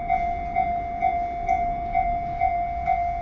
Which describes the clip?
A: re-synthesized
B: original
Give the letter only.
B